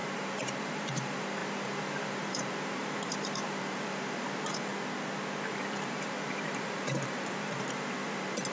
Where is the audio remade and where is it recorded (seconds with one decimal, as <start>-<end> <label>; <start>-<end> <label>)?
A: 0.0-4.7 remade; 4.7-5.5 recorded; 5.5-8.5 remade